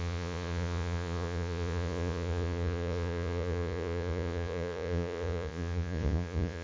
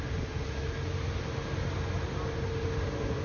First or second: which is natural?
second